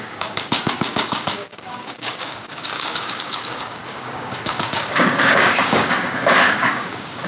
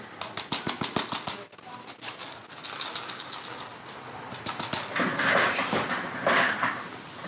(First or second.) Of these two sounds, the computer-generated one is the first